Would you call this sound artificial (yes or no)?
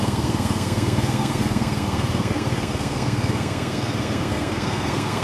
yes